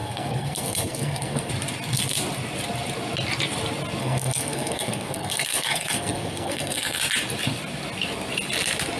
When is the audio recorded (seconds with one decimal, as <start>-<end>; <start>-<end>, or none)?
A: 1.5-4.0; 7.0-9.0